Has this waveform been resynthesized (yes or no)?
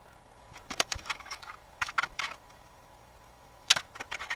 yes